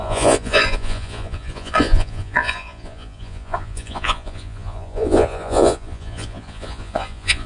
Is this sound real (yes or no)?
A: no